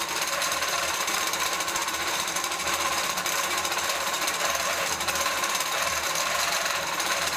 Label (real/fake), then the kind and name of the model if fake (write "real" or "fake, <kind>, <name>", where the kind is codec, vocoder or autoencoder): fake, vocoder, BigVGAN v2